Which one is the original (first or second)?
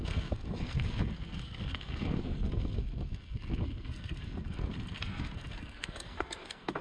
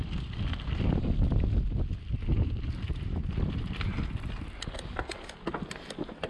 second